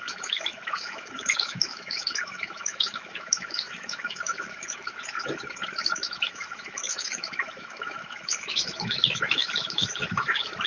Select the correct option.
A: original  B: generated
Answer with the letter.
B